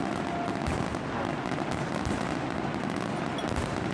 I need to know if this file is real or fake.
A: real